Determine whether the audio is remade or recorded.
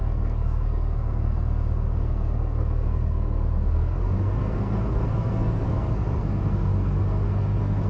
remade